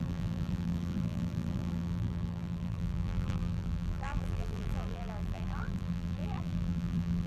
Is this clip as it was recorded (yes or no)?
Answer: no